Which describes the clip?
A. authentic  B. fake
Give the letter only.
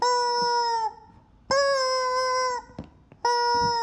A